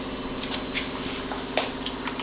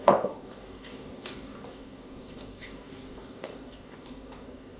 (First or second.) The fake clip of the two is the second